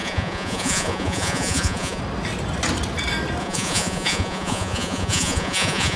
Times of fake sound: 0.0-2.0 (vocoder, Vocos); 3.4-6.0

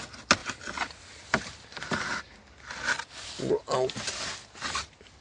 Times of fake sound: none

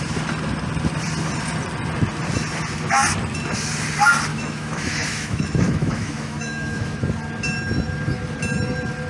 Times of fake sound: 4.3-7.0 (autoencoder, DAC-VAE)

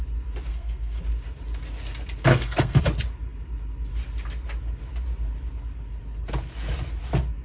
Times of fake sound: 0.5-1.0 (codec, SNAC); 2.3-2.8

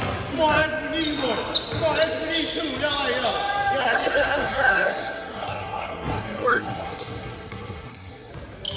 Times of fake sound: 3.8-8.3 (codec, SNAC)

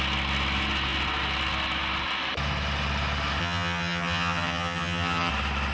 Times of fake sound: 3.4-5.3 (vocoder, HiFi-GAN)

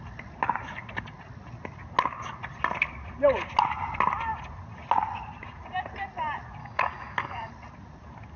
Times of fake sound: 6.6-7.5 (codec, DAC)